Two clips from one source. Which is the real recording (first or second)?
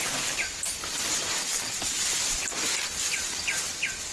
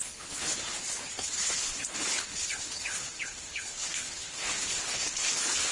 first